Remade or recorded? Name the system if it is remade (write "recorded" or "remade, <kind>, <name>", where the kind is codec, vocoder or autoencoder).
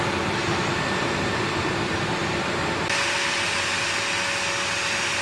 recorded